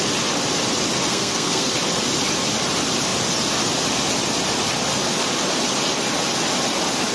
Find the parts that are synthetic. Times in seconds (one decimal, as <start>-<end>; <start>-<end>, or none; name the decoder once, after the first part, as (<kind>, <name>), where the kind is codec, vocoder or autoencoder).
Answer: 1.1-1.7 (codec, SNAC)